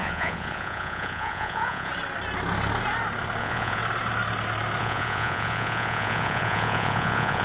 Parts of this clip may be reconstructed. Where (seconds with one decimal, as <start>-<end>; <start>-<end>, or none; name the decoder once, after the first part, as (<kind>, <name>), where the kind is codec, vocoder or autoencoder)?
0.0-1.9 (vocoder, Vocos); 3.4-3.8; 4.8-7.4

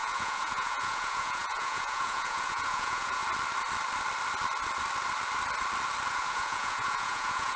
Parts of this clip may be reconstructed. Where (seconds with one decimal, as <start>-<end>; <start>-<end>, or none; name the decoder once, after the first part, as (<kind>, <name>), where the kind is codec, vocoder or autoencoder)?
0.0-3.2 (vocoder, Vocos); 6.1-7.6

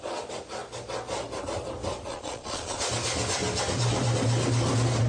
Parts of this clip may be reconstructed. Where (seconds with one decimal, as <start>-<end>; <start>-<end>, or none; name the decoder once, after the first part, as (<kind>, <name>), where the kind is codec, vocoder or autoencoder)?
2.1-2.9 (vocoder, Vocos)